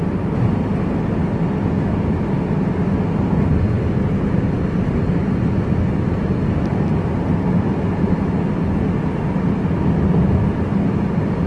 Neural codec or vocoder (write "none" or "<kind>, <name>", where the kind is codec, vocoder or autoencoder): none